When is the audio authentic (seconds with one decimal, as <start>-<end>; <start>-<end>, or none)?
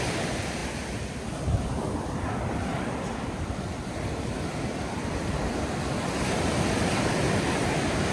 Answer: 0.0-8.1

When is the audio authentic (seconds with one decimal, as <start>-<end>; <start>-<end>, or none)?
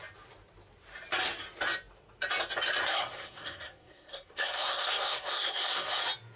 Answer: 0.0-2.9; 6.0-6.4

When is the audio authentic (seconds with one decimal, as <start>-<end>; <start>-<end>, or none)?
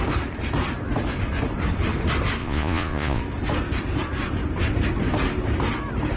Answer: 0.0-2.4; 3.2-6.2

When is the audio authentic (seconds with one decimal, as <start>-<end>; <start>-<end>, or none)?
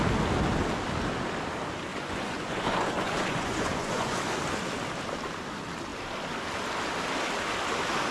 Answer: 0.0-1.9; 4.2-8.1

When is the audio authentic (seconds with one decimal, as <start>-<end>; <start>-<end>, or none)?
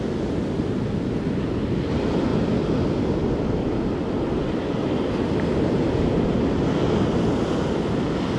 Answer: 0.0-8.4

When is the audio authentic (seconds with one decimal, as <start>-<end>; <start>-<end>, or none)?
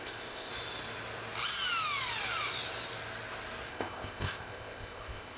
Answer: 0.5-3.7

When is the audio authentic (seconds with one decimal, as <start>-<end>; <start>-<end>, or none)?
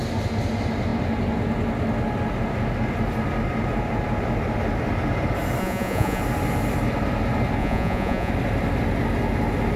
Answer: 0.0-5.6; 6.2-7.6; 8.3-9.8